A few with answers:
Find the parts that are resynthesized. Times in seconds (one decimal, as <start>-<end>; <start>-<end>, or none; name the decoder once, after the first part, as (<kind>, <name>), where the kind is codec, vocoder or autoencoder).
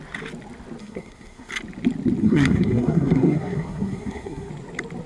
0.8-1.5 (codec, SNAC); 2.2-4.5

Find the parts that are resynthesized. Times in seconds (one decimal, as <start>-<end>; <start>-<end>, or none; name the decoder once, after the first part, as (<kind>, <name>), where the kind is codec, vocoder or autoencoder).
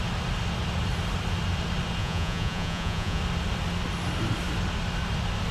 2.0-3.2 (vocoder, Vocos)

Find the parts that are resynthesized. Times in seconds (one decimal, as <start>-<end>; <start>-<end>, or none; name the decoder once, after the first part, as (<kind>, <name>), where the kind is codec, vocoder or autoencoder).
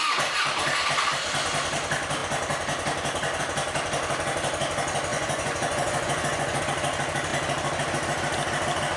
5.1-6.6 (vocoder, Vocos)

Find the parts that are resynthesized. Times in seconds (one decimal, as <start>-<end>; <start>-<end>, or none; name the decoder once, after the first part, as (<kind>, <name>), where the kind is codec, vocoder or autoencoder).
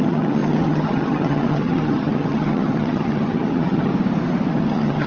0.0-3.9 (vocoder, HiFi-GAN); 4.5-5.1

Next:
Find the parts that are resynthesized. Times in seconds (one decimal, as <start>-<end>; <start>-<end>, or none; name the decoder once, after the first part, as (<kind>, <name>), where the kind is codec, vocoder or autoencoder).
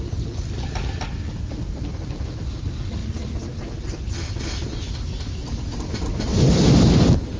none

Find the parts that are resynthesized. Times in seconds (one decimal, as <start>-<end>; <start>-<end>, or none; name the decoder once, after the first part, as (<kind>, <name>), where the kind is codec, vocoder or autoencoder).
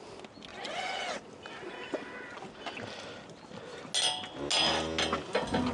0.5-1.1 (vocoder, Vocos)